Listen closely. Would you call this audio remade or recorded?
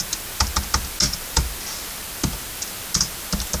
recorded